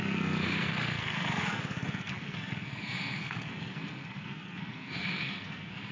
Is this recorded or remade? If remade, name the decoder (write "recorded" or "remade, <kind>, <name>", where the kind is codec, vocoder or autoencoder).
remade, codec, SNAC